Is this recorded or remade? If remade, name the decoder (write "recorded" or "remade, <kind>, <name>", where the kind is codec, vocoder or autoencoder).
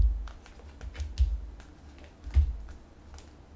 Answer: recorded